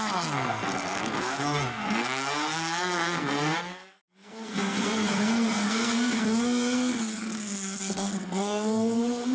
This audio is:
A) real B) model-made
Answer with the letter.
B